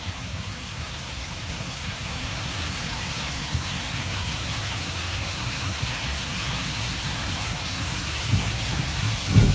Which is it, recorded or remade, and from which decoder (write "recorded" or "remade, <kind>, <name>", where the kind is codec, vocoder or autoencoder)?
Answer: remade, codec, SNAC